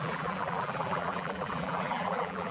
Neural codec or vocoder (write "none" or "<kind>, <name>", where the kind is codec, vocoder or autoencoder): vocoder, BigVGAN v2